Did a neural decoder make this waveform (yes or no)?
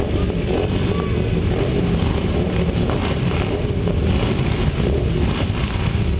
no